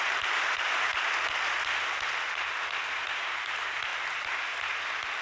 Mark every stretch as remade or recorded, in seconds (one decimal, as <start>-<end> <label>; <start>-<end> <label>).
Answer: 0.0-0.9 remade; 0.9-2.9 recorded; 2.9-3.9 remade; 3.9-5.2 recorded